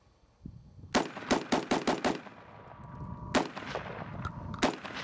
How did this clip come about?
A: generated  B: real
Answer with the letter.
B